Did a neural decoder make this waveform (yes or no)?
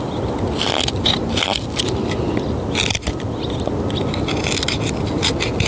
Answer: no